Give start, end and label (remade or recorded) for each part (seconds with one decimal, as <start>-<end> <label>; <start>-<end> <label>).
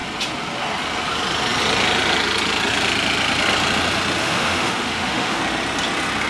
0.0-4.2 recorded; 4.2-5.4 remade; 5.4-6.3 recorded